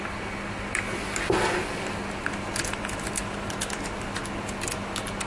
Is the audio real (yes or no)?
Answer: yes